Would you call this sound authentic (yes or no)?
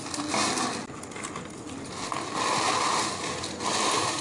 yes